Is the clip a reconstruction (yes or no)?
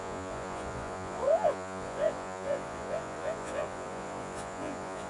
yes